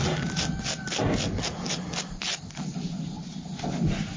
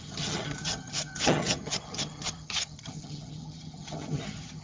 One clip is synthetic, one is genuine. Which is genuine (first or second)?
first